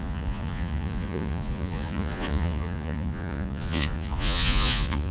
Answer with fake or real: fake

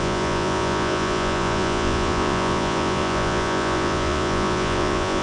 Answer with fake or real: fake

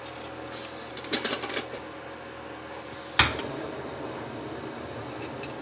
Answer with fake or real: real